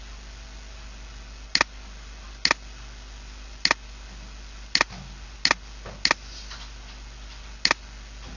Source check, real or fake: real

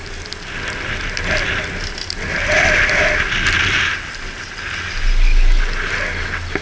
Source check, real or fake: real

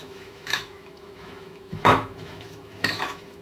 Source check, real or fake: fake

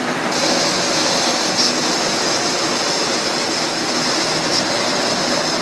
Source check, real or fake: real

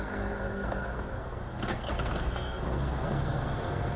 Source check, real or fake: fake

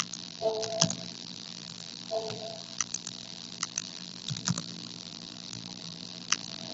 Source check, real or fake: fake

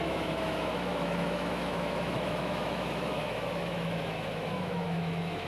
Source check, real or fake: fake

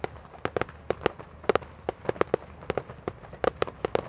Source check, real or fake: real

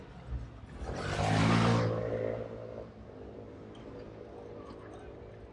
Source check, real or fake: real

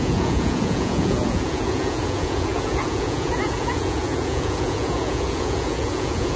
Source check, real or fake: fake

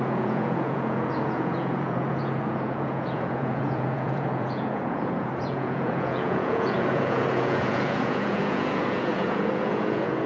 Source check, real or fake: fake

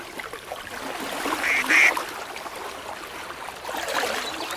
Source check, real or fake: real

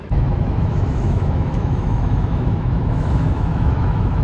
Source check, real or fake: fake